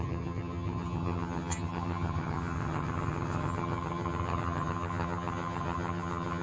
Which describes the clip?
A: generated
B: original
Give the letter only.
A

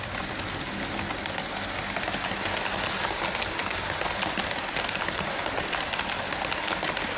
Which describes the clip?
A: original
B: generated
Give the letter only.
A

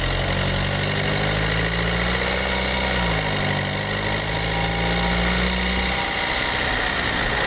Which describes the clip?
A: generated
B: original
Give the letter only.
B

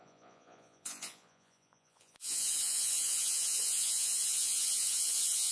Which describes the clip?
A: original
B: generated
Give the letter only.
B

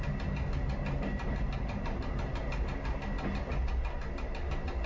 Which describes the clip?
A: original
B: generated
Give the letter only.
A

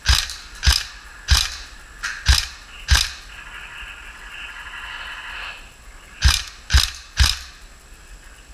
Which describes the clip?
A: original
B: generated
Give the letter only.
A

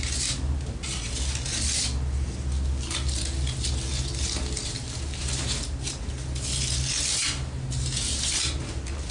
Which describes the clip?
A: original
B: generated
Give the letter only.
A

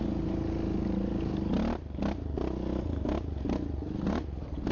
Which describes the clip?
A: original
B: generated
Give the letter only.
A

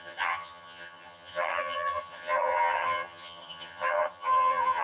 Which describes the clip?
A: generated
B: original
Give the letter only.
A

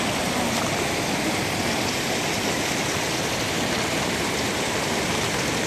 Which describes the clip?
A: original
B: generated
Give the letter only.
A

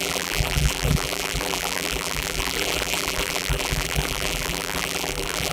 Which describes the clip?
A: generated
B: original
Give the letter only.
A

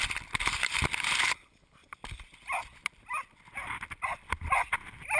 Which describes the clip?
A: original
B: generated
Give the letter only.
A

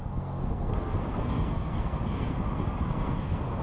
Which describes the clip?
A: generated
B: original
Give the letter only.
A